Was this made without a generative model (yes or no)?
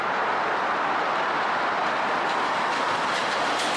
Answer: yes